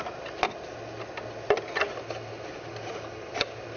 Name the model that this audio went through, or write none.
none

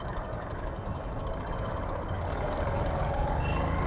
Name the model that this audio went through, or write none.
codec, DAC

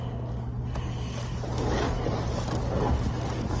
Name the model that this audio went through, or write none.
none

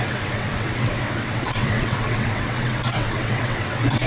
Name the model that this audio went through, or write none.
vocoder, WaveNeXt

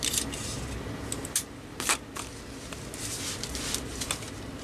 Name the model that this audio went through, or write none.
none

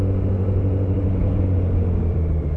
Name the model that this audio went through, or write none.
none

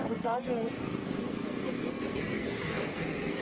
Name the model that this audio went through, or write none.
codec, SNAC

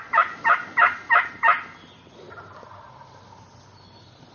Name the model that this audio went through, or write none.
none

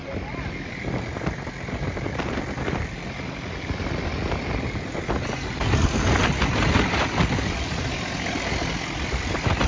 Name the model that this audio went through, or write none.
none